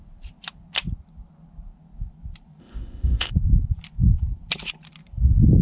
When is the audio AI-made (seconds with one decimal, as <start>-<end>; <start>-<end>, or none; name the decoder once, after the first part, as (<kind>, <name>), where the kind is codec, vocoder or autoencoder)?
2.6-3.3 (codec, ZipCodec)